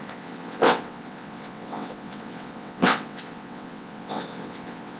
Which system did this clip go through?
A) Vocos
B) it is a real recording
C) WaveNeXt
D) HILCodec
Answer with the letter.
C